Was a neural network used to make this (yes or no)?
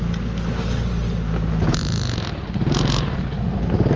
no